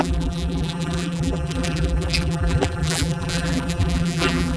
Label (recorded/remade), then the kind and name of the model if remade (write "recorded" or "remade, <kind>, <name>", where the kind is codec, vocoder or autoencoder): remade, vocoder, BigVGAN v2